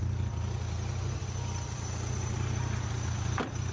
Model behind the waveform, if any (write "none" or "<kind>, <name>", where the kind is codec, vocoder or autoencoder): none